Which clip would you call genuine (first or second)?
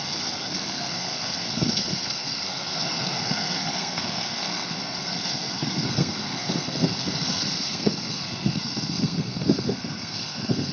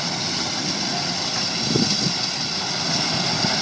second